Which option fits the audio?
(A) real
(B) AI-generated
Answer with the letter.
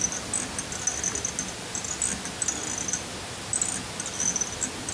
A